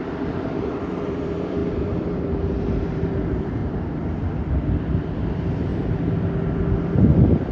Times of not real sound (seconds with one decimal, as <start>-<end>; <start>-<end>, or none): 0.0-3.6; 4.2-5.7; 7.0-7.5